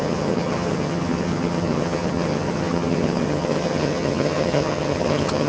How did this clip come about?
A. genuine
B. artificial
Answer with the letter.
B